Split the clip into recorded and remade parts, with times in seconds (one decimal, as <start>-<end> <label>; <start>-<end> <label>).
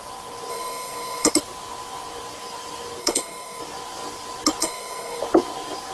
0.0-0.5 recorded; 0.5-1.3 remade; 1.3-3.0 recorded; 3.0-3.6 remade; 3.6-4.6 recorded; 4.6-5.2 remade; 5.2-5.9 recorded